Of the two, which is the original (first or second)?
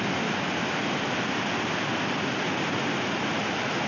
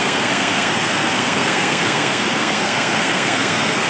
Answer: first